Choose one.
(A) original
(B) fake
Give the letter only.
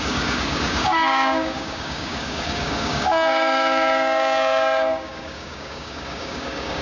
B